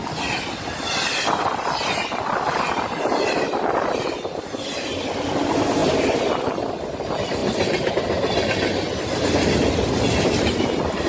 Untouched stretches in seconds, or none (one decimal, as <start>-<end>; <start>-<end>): 0.0-11.1